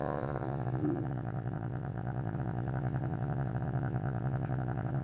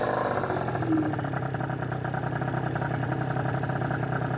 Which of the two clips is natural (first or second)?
second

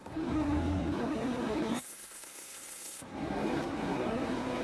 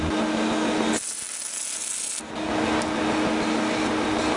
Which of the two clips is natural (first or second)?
second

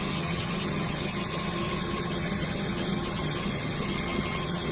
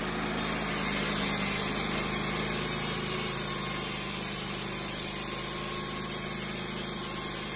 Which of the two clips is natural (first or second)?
second